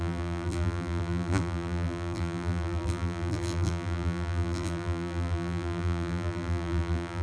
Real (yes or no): no